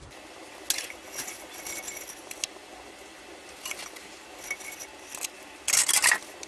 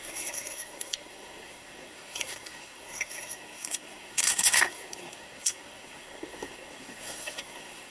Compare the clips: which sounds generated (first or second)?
second